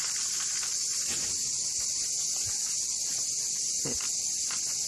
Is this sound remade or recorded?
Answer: recorded